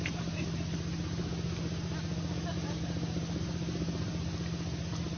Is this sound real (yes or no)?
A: yes